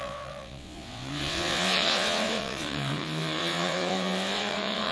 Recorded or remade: remade